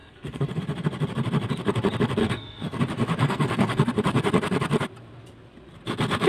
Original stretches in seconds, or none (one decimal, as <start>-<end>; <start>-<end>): 0.6-2.2; 2.8-3.2; 3.8-6.3